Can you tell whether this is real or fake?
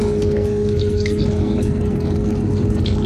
fake